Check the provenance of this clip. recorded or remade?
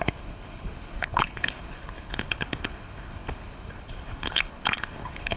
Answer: remade